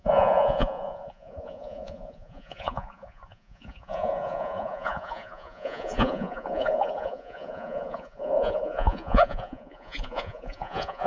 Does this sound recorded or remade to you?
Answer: remade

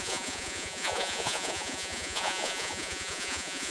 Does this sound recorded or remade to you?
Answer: remade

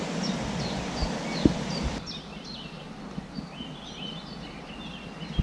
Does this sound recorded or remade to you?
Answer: recorded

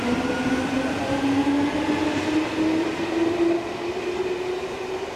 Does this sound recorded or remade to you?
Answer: recorded